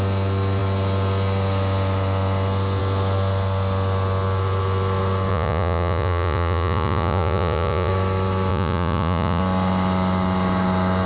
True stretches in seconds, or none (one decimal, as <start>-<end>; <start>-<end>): 0.0-5.3; 7.9-8.5; 9.4-11.1